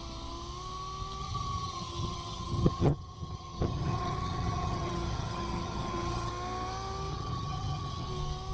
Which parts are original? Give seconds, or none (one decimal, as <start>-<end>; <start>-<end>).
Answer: 0.0-1.2; 6.3-7.1; 8.1-8.5